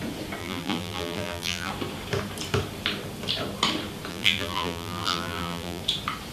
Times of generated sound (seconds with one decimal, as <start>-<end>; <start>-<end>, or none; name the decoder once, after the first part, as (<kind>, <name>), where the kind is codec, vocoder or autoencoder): 0.4-1.7 (vocoder, BigVGAN v2); 4.1-5.8